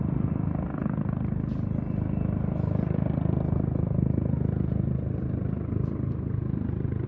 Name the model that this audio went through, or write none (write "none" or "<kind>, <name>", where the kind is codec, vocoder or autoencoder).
none